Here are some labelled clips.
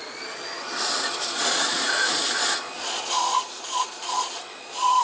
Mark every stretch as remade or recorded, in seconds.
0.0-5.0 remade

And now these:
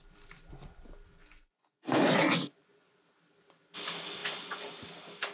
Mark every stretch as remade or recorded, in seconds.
0.0-1.2 recorded; 1.2-3.0 remade; 3.0-4.2 recorded; 4.2-4.7 remade; 4.7-5.3 recorded